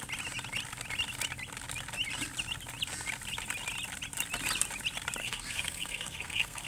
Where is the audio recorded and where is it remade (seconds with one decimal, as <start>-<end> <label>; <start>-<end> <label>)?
0.0-5.2 recorded; 5.2-6.7 remade